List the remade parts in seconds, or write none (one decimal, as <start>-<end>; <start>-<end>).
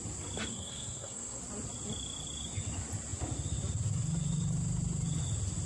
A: 0.5-1.4